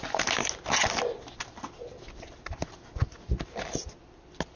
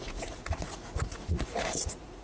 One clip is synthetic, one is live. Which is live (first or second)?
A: first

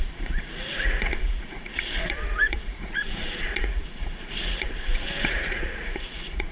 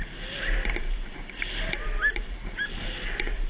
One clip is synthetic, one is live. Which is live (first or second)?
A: second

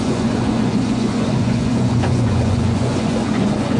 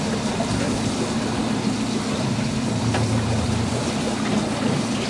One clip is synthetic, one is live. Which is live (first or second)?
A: second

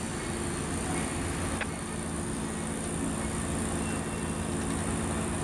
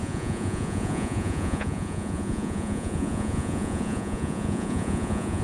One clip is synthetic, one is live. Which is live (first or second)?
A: first